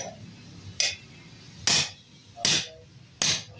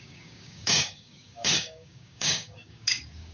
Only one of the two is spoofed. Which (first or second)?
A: second